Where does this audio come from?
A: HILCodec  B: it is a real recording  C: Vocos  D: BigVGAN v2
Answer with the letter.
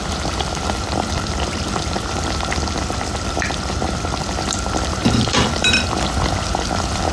D